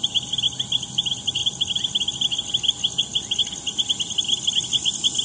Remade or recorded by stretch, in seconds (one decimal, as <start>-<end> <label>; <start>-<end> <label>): 0.0-5.2 recorded